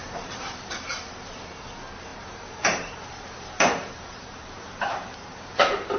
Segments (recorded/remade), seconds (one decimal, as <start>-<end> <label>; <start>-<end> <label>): 0.0-0.7 remade; 0.7-2.1 recorded; 2.1-6.0 remade